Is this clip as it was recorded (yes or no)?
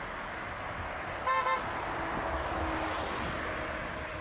yes